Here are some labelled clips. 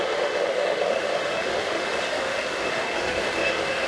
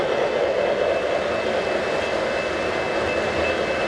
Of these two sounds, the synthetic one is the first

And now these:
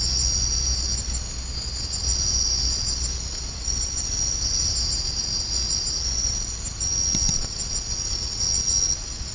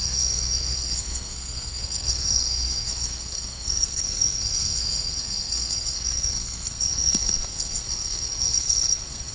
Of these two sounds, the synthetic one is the second